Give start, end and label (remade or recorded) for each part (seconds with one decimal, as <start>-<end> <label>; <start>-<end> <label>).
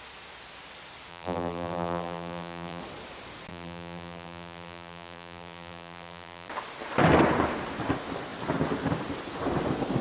0.0-1.1 recorded; 1.1-2.8 remade; 2.8-3.5 recorded; 3.5-6.5 remade; 6.5-10.0 recorded